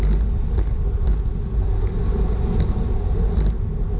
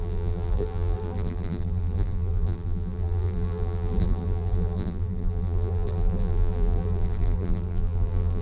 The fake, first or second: second